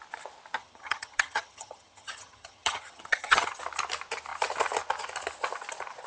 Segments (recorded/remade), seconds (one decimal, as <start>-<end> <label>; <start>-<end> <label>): 0.0-0.6 recorded; 0.6-3.6 remade; 3.6-6.1 recorded